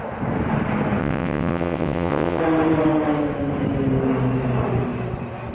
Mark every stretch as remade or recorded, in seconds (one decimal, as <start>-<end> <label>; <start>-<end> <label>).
0.0-1.0 recorded; 1.0-2.4 remade; 2.4-5.5 recorded